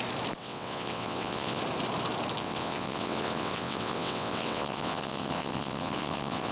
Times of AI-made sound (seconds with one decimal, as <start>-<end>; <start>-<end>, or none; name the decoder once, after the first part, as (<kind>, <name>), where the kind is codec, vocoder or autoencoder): 0.4-1.6 (vocoder, WaveNeXt); 2.4-6.5